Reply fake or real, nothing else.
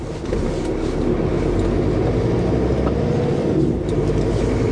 real